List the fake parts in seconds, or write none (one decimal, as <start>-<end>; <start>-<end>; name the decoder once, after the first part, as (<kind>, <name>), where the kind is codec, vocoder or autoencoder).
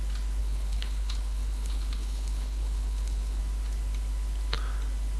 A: 0.4-3.4 (codec, HILCodec)